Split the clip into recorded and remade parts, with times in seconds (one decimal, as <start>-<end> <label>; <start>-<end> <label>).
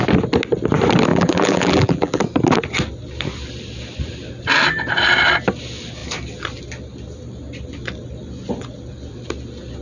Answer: 0.0-1.1 recorded; 1.1-2.2 remade; 2.2-9.8 recorded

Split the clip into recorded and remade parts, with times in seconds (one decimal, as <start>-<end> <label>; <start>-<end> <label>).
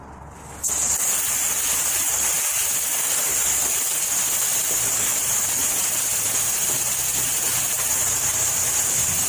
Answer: 0.0-2.0 recorded; 2.0-3.4 remade; 3.4-9.3 recorded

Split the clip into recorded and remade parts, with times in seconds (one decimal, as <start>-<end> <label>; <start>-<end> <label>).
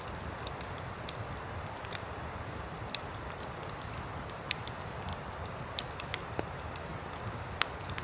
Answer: 0.0-5.1 recorded; 5.1-5.8 remade; 5.8-8.0 recorded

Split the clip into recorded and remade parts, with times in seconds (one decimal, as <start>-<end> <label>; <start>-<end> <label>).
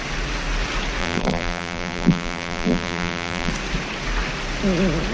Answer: 0.0-1.0 recorded; 1.0-3.5 remade; 3.5-5.1 recorded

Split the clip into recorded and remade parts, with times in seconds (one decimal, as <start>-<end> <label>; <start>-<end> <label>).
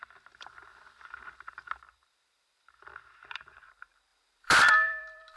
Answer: 0.0-5.4 remade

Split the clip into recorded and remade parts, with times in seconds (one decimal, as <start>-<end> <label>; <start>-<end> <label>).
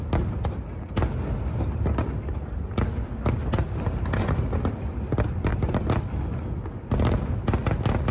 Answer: 0.0-5.5 recorded; 5.5-7.4 remade; 7.4-8.1 recorded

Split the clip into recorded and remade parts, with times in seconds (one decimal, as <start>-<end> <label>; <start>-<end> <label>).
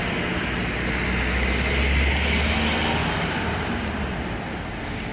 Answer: 0.0-3.0 recorded; 3.0-4.6 remade; 4.6-5.1 recorded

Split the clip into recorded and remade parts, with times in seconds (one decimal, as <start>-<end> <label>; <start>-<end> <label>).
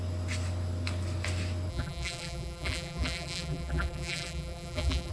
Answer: 0.0-1.7 recorded; 1.7-5.1 remade